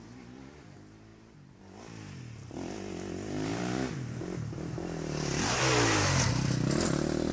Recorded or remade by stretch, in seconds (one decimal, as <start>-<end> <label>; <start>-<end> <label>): 0.0-1.1 recorded; 1.1-2.2 remade; 2.2-3.5 recorded; 3.5-5.6 remade; 5.6-7.3 recorded